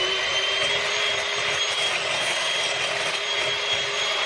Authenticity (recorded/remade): remade